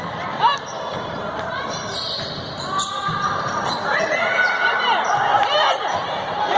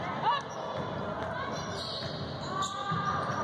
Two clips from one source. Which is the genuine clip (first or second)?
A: second